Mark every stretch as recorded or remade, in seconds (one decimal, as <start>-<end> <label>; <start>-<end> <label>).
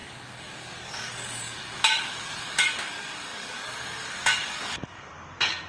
0.0-5.7 remade